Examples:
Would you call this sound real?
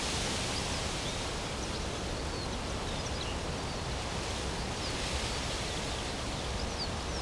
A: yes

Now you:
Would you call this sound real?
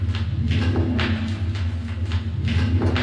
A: yes